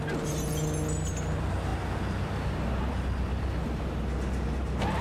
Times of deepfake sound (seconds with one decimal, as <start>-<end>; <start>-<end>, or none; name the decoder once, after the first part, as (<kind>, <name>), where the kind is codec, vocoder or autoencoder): none